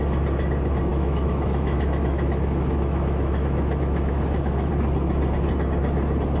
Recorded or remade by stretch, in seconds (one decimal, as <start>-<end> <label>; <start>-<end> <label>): 0.0-0.9 recorded; 0.9-4.7 remade; 4.7-6.4 recorded